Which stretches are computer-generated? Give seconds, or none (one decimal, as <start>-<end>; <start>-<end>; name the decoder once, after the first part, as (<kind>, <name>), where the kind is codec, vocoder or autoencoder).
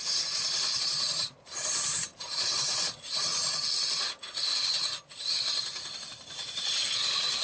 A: 0.9-3.3 (vocoder, BigVGAN v2); 6.0-7.4